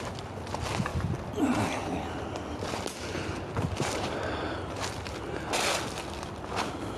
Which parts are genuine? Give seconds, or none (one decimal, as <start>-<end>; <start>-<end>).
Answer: 0.0-7.0